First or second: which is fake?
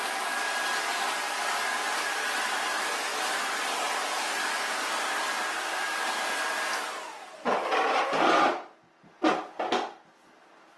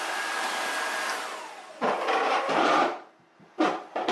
second